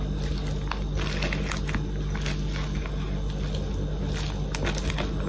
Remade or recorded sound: recorded